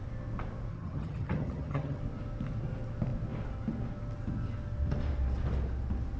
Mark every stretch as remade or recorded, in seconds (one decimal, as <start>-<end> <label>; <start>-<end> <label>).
0.0-0.7 recorded; 0.7-2.0 remade; 2.0-6.2 recorded